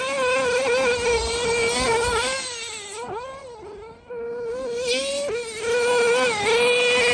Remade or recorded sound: recorded